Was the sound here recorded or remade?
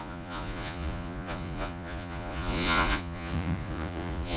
remade